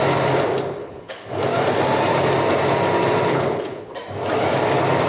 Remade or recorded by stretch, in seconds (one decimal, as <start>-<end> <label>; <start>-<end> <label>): 0.0-0.8 recorded; 0.8-1.3 remade; 1.3-3.3 recorded; 3.3-3.9 remade; 3.9-5.1 recorded